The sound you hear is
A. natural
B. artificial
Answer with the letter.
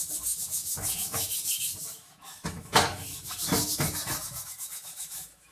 B